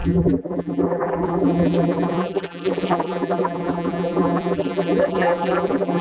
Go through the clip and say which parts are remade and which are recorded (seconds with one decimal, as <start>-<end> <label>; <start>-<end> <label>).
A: 0.0-6.0 remade